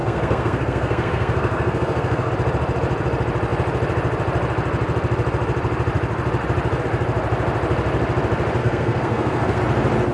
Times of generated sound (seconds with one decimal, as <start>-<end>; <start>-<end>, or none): 0.0-2.3; 8.6-9.6